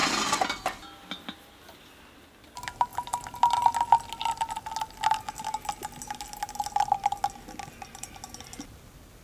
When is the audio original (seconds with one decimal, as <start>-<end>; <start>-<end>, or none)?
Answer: 0.0-9.2